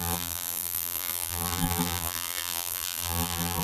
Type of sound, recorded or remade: remade